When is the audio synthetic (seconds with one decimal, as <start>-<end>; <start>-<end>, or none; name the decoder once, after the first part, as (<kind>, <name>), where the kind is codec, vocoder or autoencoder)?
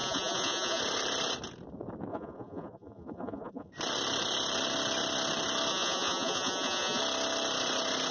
0.0-0.8 (vocoder, Vocos); 2.1-3.7; 5.7-7.0